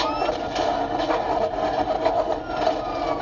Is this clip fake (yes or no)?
no